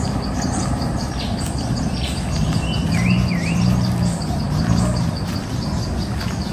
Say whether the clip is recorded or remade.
recorded